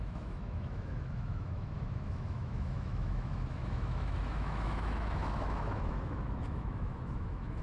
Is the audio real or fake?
fake